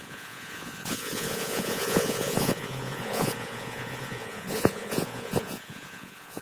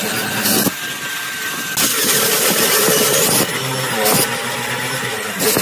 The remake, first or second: first